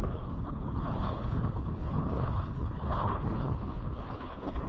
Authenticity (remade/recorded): remade